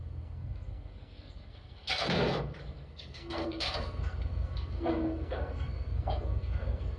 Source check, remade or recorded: remade